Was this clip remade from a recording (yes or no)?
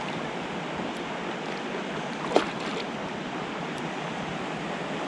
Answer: no